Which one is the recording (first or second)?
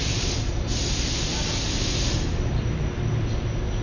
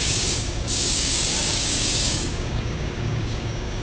first